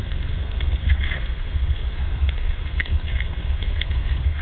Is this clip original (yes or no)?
no